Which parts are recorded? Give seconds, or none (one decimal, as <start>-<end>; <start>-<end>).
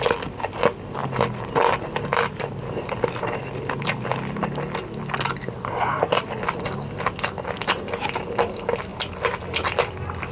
0.0-10.3